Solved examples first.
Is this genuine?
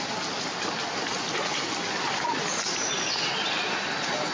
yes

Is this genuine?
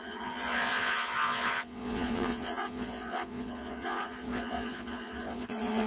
no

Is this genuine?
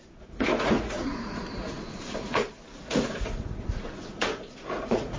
no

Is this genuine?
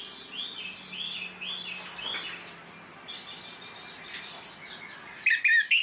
yes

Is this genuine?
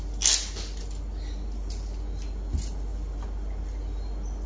yes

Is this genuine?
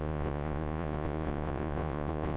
no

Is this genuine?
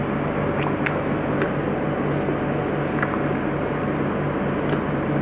yes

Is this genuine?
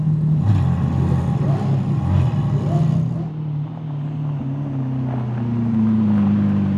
yes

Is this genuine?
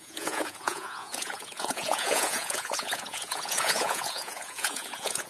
no